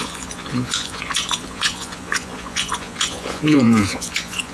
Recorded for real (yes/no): no